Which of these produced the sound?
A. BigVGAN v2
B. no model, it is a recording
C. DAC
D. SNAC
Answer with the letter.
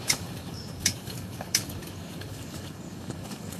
C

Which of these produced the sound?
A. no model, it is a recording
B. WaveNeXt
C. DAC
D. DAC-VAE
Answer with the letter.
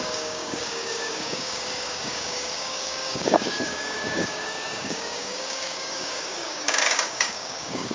C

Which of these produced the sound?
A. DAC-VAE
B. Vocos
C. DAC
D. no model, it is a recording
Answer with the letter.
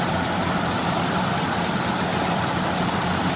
D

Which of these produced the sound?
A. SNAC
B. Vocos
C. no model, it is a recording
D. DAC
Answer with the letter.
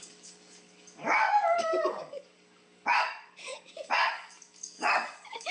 D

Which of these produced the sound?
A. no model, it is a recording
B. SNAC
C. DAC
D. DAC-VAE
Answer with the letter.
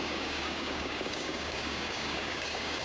C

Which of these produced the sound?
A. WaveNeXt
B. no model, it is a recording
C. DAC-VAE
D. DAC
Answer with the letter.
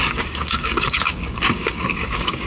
D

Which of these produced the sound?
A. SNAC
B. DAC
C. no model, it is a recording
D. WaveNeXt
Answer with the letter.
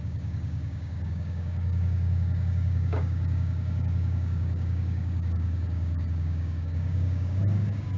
B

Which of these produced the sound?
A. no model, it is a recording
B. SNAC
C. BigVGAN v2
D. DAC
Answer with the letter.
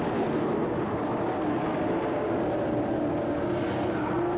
A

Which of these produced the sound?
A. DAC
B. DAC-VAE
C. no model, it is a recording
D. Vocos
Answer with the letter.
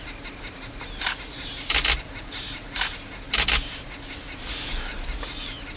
C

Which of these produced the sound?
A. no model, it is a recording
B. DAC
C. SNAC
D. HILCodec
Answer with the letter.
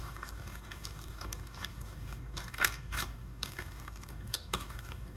B